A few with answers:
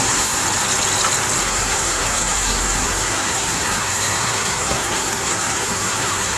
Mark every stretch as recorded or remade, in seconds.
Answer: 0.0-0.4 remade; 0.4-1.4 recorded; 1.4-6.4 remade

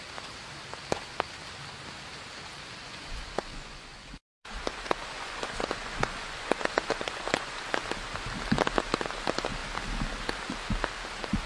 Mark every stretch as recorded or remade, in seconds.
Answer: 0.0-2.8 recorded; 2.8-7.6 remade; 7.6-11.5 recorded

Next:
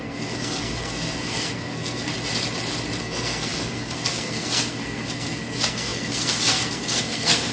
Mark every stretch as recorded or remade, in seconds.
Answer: 0.0-2.1 remade; 2.1-3.0 recorded; 3.0-7.5 remade

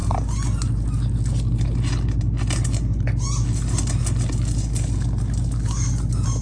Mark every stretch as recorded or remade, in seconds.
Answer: 0.0-6.4 recorded